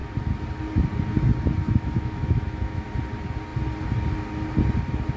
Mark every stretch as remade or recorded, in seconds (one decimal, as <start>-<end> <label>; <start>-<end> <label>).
0.0-1.6 recorded; 1.6-2.9 remade; 2.9-5.2 recorded